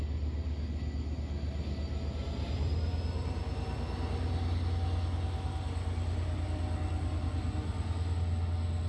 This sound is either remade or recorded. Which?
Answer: recorded